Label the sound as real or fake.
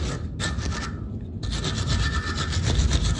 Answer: real